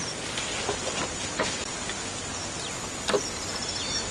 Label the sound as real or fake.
real